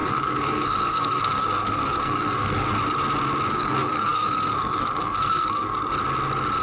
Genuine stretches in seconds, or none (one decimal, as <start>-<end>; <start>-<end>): 2.7-3.5; 5.7-6.6